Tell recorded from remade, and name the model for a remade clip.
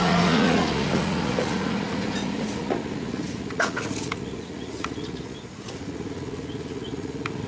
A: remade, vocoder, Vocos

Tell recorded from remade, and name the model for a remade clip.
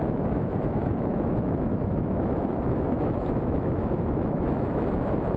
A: remade, autoencoder, DAC-VAE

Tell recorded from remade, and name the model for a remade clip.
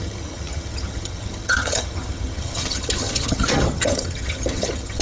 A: remade, vocoder, HiFi-GAN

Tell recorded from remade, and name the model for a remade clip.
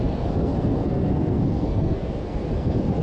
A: remade, codec, SNAC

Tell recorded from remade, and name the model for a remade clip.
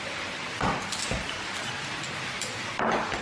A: recorded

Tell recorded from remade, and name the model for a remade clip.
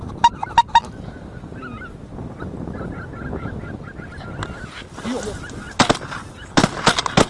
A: recorded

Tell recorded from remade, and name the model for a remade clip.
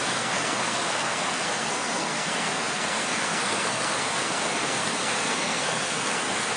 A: remade, codec, SNAC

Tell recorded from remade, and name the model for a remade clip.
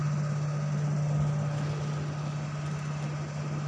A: recorded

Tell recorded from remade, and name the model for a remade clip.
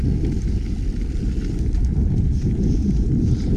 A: recorded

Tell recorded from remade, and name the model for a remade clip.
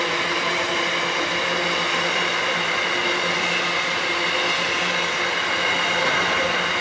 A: recorded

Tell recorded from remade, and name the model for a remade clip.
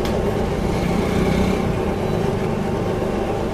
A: recorded